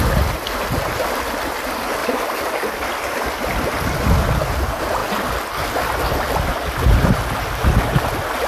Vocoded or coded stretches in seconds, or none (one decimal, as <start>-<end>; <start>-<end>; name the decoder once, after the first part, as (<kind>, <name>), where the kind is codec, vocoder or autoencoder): 2.0-4.3 (vocoder, BigVGAN v2)